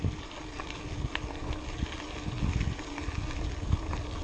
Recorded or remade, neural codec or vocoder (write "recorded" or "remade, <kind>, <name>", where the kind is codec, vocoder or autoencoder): recorded